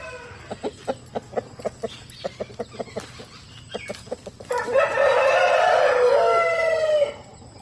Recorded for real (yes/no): yes